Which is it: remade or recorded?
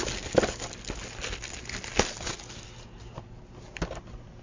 recorded